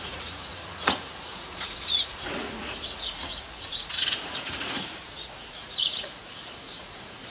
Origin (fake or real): fake